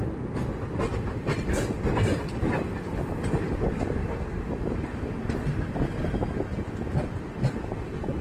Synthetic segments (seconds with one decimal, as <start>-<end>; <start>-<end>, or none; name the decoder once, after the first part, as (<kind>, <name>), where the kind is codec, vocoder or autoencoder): 2.1-5.6 (vocoder, BigVGAN v2)